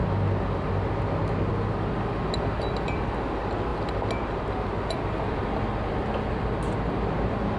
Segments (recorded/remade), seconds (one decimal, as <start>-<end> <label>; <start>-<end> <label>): 0.0-7.6 recorded

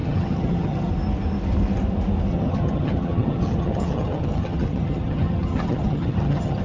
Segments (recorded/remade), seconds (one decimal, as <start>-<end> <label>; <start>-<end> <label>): 0.0-0.9 remade; 0.9-2.3 recorded; 2.3-6.6 remade

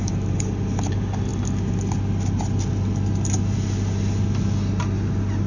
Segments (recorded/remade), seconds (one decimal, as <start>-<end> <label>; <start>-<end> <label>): 0.0-5.5 recorded

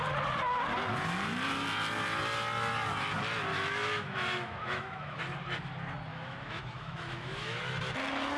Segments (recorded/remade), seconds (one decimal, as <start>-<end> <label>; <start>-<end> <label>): 0.0-3.5 recorded; 3.5-5.2 remade; 5.2-6.1 recorded; 6.1-7.6 remade; 7.6-8.4 recorded

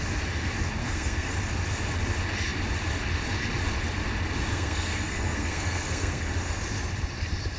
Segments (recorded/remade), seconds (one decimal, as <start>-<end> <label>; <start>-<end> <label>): 0.0-0.8 recorded; 0.8-1.3 remade; 1.3-4.5 recorded; 4.5-6.3 remade; 6.3-7.6 recorded

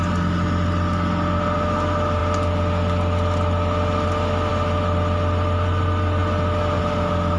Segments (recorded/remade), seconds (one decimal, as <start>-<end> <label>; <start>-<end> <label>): 0.0-7.4 recorded

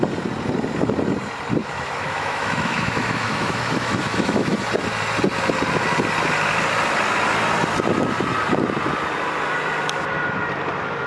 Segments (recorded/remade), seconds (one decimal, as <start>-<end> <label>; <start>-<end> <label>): 0.0-1.6 recorded; 1.6-4.5 remade; 4.5-11.1 recorded